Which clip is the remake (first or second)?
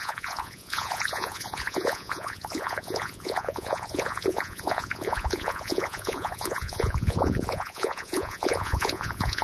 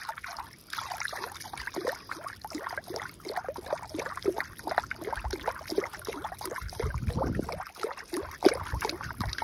first